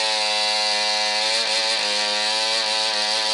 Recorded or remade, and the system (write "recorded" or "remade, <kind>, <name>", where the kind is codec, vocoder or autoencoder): recorded